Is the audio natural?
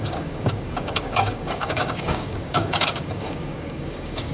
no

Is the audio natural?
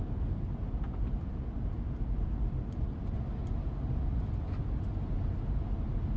yes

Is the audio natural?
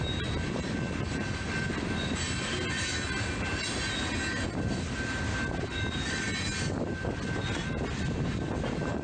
yes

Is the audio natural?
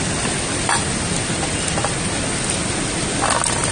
yes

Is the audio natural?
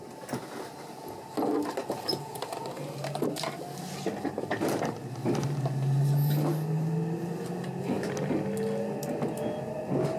yes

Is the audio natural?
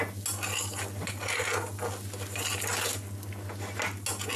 yes